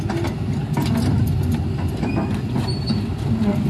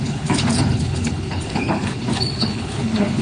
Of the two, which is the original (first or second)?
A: first